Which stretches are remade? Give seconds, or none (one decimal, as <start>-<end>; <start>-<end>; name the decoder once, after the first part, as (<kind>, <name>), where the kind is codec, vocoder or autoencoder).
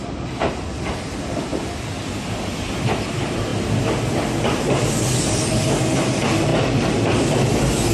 0.0-1.5 (vocoder, BigVGAN v2); 2.7-3.5; 4.5-7.9